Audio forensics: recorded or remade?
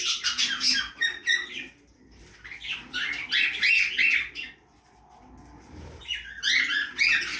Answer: recorded